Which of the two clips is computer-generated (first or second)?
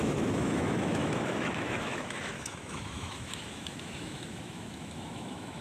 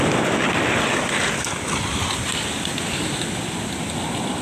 first